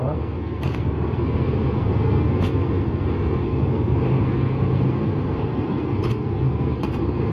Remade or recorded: remade